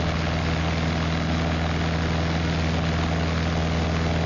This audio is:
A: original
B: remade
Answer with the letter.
A